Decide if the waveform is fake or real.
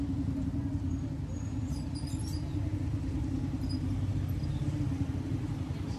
real